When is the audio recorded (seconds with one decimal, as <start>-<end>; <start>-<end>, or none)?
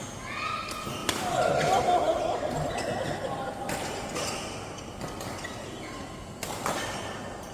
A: 0.0-7.5